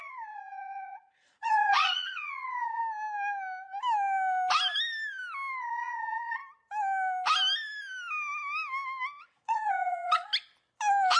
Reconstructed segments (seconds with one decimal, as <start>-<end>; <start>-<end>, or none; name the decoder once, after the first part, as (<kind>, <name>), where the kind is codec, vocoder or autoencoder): 0.0-2.8 (vocoder, Vocos); 5.6-6.4; 9.2-10.3